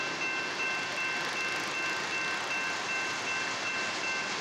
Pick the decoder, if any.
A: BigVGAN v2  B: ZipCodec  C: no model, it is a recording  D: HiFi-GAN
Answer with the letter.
C